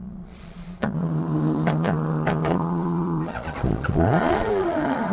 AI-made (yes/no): yes